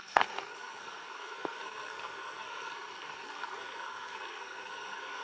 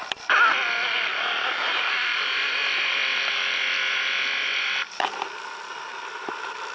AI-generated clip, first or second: first